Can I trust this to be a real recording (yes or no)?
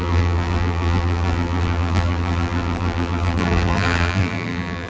no